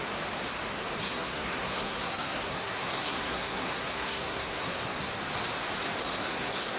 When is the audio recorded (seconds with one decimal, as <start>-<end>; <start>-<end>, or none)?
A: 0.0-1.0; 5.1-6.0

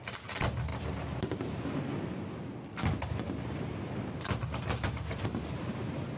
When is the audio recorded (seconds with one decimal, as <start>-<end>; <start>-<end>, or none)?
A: 0.0-6.2

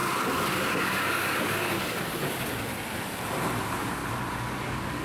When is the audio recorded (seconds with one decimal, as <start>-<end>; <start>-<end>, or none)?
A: 2.7-3.6; 4.0-4.6

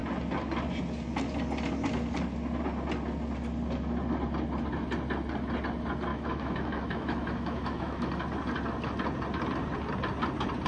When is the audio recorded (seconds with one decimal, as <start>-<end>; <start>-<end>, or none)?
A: 0.0-6.1; 8.1-10.7